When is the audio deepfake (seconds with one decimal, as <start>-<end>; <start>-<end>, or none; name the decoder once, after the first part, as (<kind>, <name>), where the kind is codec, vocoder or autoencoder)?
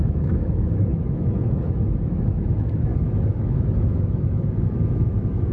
0.0-5.5 (autoencoder, DAC-VAE)